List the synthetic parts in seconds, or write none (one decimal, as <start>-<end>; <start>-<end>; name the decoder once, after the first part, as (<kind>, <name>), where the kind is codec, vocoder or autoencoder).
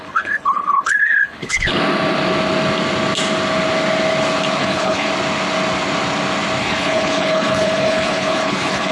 0.0-1.7 (codec, HILCodec); 4.6-5.1; 6.6-8.9